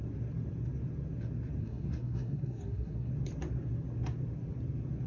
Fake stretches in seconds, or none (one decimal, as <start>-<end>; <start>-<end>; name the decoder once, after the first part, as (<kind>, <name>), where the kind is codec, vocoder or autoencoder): 1.6-3.1 (codec, SNAC)